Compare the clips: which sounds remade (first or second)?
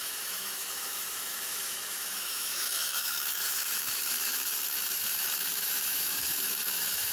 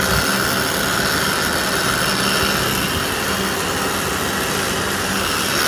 first